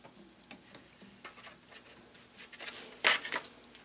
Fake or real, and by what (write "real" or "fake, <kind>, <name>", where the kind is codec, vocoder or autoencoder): real